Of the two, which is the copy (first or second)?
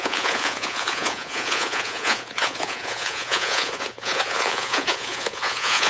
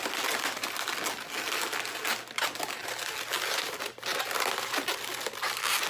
first